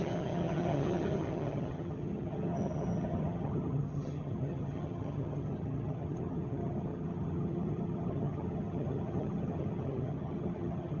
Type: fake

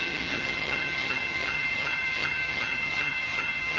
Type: fake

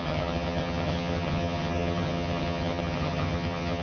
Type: fake